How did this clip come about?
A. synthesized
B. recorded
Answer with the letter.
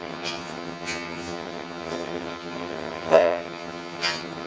A